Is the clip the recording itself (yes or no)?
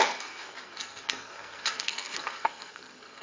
no